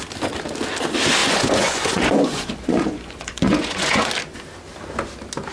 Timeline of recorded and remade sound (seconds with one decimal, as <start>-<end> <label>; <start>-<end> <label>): 0.0-1.2 recorded; 1.2-4.1 remade; 4.1-5.5 recorded